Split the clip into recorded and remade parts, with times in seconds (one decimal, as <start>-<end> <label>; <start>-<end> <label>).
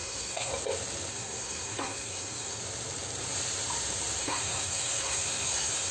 0.0-0.5 remade; 0.5-1.1 recorded; 1.1-2.6 remade; 2.6-4.2 recorded; 4.2-5.9 remade